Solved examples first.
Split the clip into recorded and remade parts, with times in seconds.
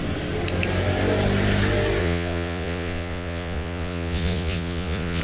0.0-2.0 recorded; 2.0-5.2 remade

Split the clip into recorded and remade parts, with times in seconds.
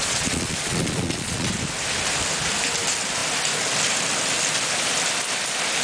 0.0-1.5 remade; 1.5-5.8 recorded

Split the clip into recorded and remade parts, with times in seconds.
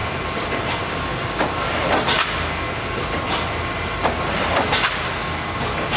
0.0-6.0 recorded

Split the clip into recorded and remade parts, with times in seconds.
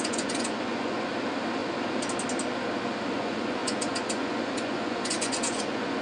0.0-1.1 remade; 1.1-3.1 recorded; 3.1-6.0 remade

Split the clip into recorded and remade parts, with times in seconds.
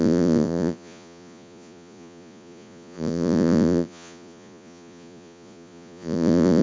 0.0-6.6 remade